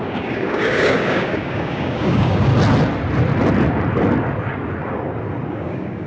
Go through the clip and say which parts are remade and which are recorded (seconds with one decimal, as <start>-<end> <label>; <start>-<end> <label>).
0.0-2.5 remade; 2.5-5.5 recorded; 5.5-6.1 remade